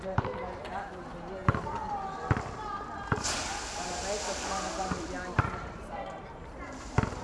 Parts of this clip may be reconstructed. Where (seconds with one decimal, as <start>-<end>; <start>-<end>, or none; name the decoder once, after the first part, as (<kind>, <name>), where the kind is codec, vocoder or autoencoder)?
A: 0.0-1.4 (vocoder, BigVGAN v2); 5.7-7.2